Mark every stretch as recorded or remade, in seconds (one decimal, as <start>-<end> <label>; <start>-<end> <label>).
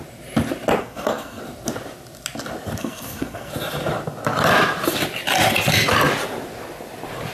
0.0-0.8 recorded; 0.8-1.4 remade; 1.4-2.8 recorded; 2.8-3.5 remade; 3.5-7.3 recorded